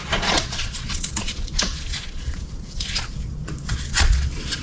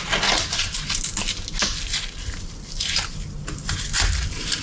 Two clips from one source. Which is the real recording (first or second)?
second